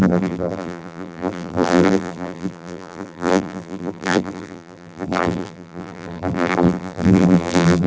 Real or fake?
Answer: fake